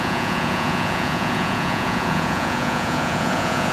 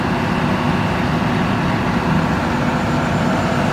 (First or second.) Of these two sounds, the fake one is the first